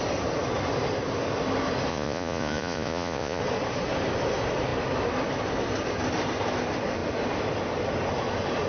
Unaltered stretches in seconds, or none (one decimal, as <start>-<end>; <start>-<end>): 0.0-1.9; 3.4-8.7